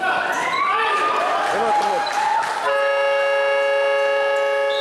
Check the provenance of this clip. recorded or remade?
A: recorded